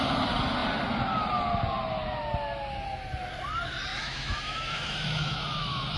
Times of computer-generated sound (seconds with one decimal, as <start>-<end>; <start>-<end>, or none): 3.9-6.0